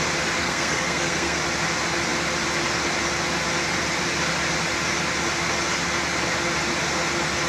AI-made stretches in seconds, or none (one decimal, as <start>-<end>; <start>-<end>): 0.4-1.4